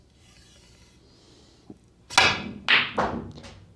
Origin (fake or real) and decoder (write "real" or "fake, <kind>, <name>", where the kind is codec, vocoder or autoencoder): real